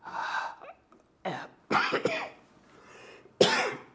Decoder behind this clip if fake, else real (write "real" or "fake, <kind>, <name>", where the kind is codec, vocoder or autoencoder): real